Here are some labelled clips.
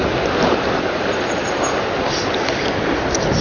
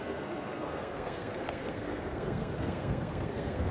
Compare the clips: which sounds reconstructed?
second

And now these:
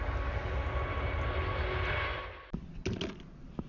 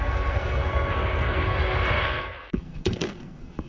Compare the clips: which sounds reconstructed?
second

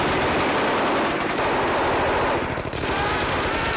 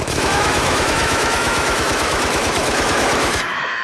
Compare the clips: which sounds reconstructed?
second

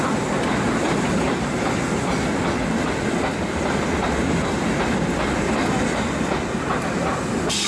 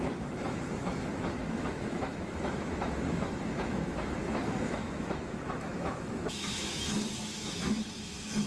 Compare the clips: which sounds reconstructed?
second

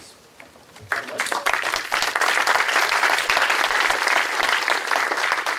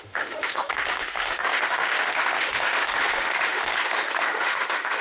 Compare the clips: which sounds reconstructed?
second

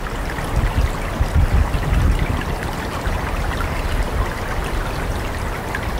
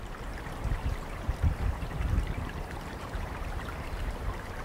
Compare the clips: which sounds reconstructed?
second